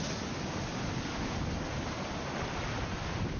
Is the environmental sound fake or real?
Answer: real